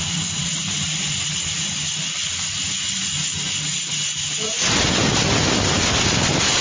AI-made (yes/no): no